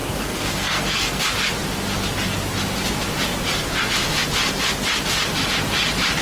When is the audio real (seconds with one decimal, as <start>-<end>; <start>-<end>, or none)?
1.2-6.2